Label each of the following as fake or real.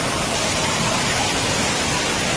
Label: real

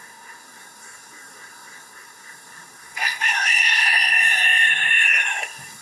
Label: fake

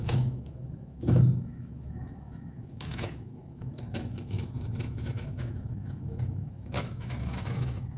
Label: fake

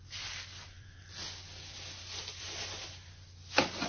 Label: real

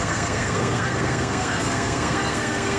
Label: fake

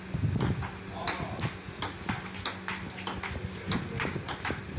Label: real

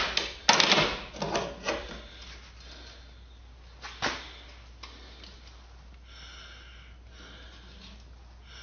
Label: real